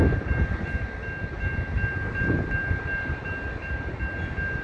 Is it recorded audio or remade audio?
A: recorded